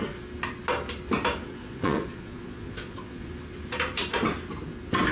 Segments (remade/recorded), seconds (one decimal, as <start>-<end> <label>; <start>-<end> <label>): 0.0-1.6 recorded; 1.6-3.3 remade; 3.3-5.1 recorded